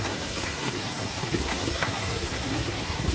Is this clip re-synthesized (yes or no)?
yes